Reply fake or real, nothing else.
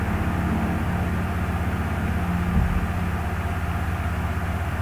real